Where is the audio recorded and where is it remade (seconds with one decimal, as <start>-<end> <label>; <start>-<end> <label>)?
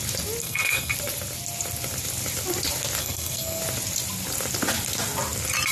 0.0-0.4 recorded; 0.4-0.9 remade; 0.9-3.0 recorded; 3.0-3.6 remade; 3.6-5.7 recorded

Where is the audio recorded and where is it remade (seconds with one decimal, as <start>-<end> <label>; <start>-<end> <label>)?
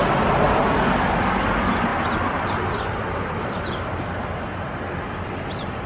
0.0-5.9 recorded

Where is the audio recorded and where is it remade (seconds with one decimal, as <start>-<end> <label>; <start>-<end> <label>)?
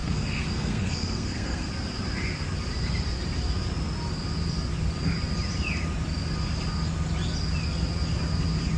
0.0-1.7 remade; 1.7-8.8 recorded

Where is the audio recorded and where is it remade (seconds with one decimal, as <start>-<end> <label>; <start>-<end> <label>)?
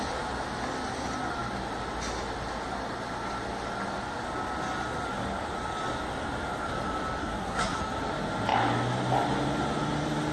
0.0-7.2 recorded; 7.2-7.8 remade; 7.8-10.3 recorded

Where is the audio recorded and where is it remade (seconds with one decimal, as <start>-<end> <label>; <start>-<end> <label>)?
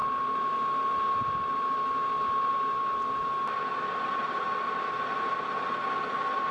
0.0-6.5 recorded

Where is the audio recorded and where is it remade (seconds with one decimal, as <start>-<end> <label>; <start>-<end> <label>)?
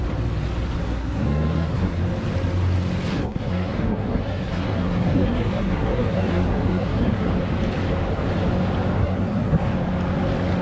0.0-0.8 recorded; 0.8-2.0 remade; 2.0-3.1 recorded; 3.1-7.3 remade; 7.3-9.0 recorded; 9.0-9.7 remade; 9.7-10.6 recorded